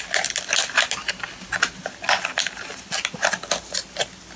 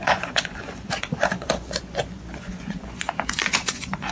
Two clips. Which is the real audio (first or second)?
first